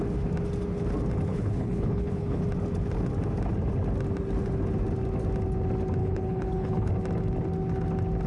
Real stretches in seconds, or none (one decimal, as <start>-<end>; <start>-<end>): 0.0-1.3; 2.4-6.0; 6.9-8.3